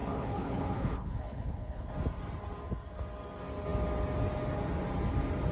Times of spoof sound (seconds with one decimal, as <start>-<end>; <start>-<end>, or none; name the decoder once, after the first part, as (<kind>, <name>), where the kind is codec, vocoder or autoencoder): 0.0-1.9 (codec, HILCodec)